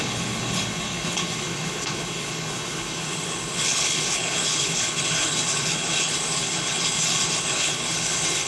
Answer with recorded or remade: remade